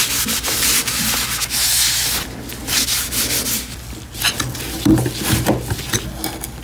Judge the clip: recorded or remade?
recorded